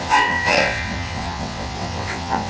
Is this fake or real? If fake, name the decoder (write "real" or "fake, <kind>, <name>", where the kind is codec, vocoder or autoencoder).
fake, vocoder, WaveNeXt